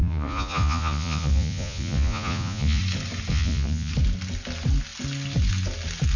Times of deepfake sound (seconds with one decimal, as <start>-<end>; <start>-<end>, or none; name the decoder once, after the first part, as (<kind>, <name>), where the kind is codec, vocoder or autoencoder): 0.0-2.8 (vocoder, Vocos); 3.3-3.9